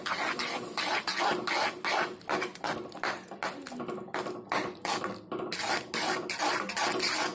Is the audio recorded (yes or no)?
yes